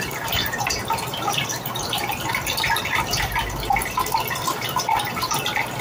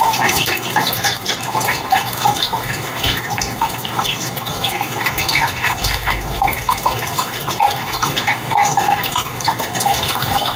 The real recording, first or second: first